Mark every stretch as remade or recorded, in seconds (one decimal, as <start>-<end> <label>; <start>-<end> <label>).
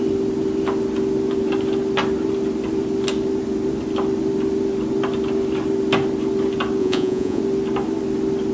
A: 0.0-6.8 recorded; 6.8-7.4 remade; 7.4-8.5 recorded